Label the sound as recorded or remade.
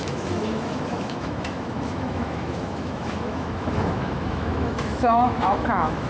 remade